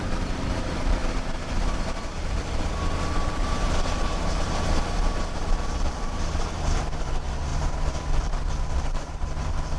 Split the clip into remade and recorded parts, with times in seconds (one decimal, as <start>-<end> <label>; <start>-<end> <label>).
0.0-1.0 remade; 1.0-2.0 recorded; 2.0-9.8 remade